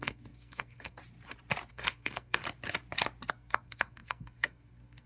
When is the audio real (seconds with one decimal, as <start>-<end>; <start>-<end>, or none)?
1.0-1.7; 2.4-3.3